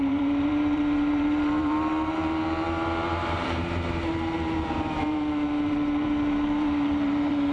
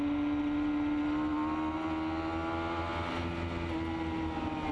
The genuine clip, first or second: second